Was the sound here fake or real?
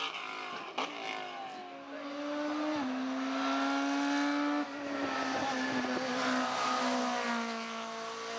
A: real